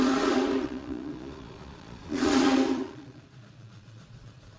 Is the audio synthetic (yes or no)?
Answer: yes